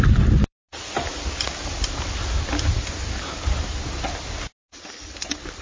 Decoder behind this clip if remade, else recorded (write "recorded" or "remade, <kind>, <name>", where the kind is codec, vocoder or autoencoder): recorded